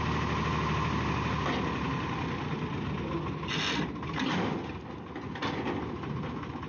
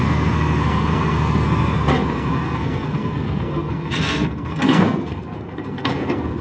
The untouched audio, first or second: first